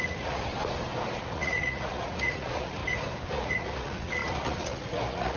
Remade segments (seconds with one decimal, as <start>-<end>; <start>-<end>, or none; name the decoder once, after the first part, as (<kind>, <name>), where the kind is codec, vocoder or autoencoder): 0.0-0.5 (vocoder, Vocos); 1.2-2.8; 3.3-5.4